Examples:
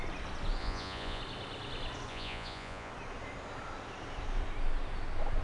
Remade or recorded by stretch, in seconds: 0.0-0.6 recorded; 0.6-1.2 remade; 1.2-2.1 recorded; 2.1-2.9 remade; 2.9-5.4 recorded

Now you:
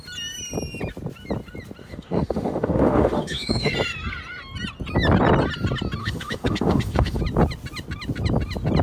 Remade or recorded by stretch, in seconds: 0.0-1.8 recorded; 1.8-3.7 remade; 3.7-6.0 recorded; 6.0-7.2 remade; 7.2-8.8 recorded